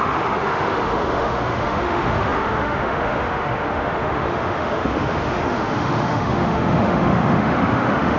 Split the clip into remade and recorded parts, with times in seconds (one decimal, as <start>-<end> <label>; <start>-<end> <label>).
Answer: 0.0-8.2 remade